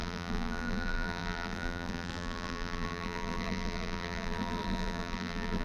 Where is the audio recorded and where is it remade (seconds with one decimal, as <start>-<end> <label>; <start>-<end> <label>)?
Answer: 0.0-5.6 remade